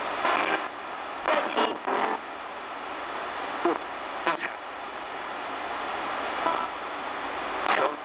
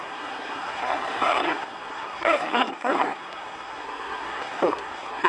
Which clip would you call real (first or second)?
first